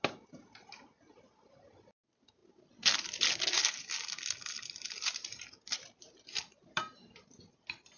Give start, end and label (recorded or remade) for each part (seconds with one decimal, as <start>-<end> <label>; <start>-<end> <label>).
0.0-8.0 recorded